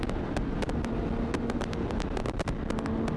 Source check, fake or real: real